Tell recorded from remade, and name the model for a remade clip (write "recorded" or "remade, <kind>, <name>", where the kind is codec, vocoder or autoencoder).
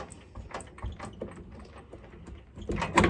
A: recorded